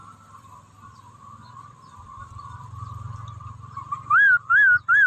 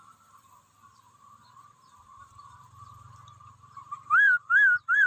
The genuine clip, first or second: first